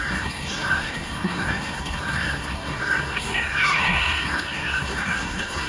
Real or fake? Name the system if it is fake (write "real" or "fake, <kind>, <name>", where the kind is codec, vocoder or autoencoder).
fake, codec, SNAC